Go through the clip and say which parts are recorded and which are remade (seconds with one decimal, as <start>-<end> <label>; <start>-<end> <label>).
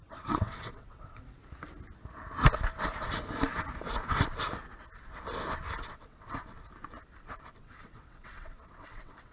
0.0-1.4 remade; 1.4-5.9 recorded; 5.9-6.4 remade; 6.4-7.6 recorded; 7.6-9.3 remade